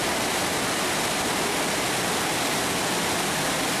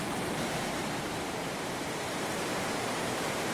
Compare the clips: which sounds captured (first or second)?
first